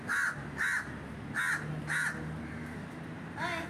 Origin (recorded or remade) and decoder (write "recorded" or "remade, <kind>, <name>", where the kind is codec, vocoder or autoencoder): recorded